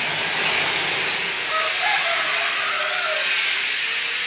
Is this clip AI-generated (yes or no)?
no